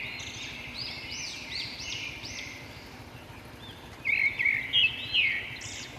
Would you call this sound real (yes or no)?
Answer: yes